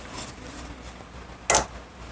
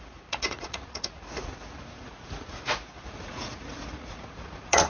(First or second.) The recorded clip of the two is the first